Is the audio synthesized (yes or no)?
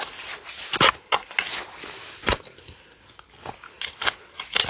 no